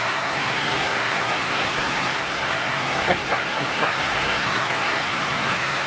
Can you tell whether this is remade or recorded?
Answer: remade